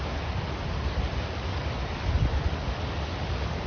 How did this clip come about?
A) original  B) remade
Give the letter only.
A